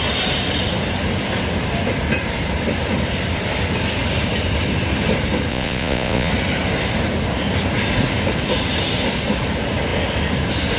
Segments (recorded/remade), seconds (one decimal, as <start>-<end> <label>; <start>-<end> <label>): 0.0-5.5 recorded; 5.5-6.3 remade; 6.3-10.8 recorded